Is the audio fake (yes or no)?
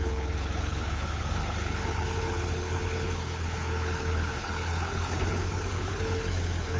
yes